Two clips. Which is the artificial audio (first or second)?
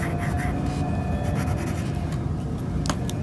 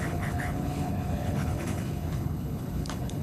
second